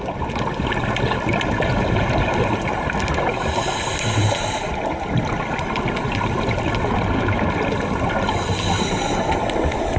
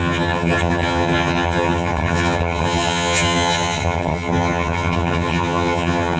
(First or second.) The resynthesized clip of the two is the second